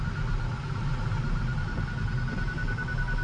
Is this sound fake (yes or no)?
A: no